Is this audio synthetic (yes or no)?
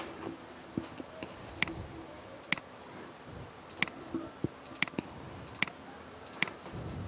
no